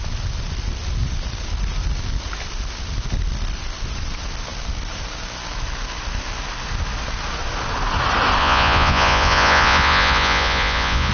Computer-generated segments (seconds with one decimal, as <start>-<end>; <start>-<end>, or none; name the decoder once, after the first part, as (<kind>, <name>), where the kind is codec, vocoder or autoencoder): 8.4-11.1 (vocoder, Vocos)